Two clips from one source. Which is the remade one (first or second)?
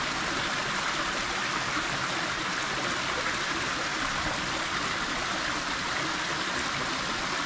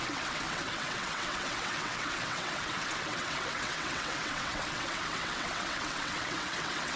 second